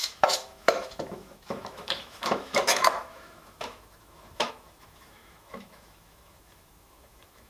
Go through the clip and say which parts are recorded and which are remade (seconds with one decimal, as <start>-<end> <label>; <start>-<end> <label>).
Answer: 0.0-7.5 remade